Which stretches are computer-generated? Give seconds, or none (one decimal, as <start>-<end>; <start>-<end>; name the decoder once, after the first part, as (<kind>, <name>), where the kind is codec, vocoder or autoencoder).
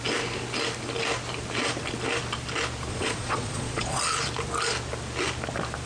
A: 2.9-4.0 (vocoder, Vocos)